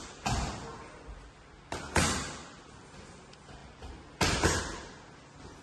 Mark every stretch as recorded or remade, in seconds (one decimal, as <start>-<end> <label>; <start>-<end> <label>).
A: 0.0-5.6 recorded